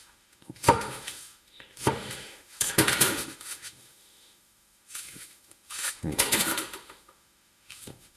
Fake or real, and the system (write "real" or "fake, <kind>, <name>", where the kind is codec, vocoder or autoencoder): fake, autoencoder, DAC-VAE